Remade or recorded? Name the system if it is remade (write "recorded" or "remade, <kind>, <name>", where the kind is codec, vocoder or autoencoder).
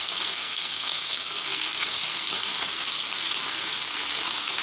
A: remade, codec, SNAC